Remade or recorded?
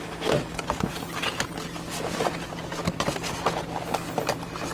recorded